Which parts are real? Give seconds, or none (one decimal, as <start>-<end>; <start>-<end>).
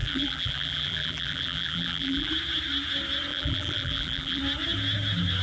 2.3-3.3; 4.4-5.4